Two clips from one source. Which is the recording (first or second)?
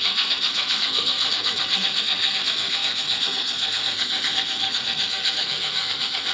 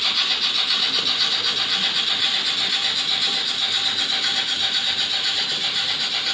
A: second